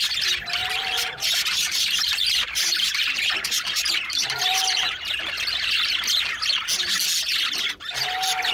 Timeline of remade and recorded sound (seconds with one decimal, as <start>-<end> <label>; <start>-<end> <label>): 0.0-0.6 recorded; 0.6-5.2 remade; 5.2-8.5 recorded